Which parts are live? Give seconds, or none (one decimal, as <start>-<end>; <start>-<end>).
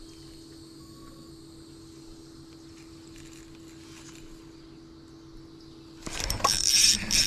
0.0-0.8; 1.3-7.3